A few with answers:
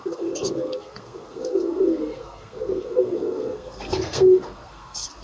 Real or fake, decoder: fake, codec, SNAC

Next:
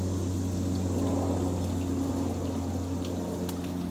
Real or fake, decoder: real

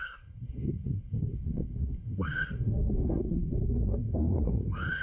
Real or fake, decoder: fake, codec, SNAC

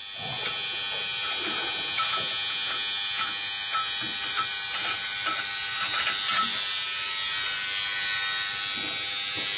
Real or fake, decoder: real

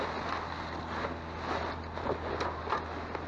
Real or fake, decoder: real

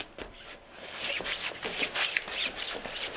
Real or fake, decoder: real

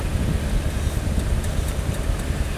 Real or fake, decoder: real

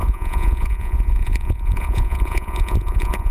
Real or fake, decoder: fake, vocoder, Vocos